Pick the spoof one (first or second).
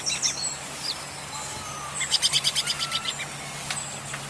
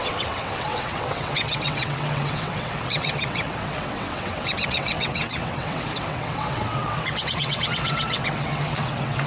second